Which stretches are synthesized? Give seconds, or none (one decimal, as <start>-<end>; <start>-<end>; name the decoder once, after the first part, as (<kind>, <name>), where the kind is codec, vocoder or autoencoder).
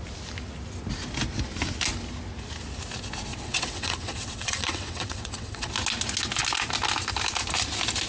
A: 3.3-5.7 (vocoder, WaveNeXt)